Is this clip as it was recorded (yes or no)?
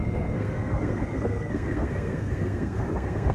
no